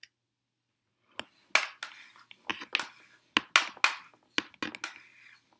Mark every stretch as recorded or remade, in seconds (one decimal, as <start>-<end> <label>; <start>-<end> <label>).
0.0-5.6 recorded